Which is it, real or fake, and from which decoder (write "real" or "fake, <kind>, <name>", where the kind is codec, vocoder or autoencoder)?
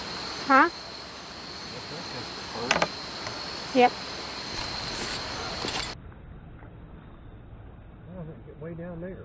real